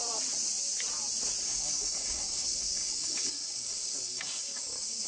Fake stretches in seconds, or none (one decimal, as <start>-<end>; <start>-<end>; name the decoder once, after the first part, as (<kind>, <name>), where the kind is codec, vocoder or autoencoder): 1.4-5.1 (codec, DAC)